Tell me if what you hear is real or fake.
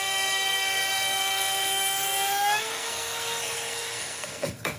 fake